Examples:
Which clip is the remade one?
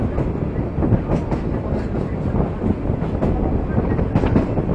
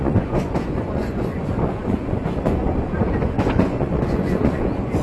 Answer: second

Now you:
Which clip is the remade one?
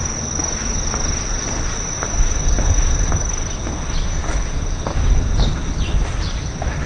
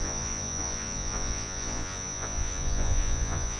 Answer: second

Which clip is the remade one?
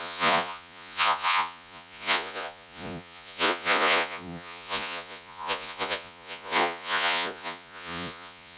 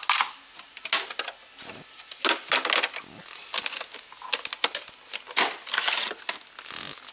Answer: first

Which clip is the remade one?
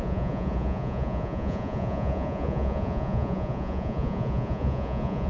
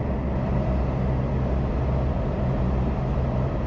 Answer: first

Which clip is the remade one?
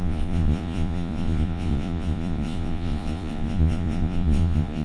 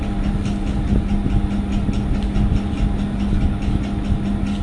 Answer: first